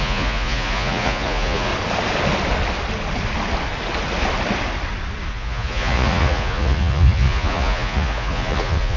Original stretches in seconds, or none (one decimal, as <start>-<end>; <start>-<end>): 1.7-5.3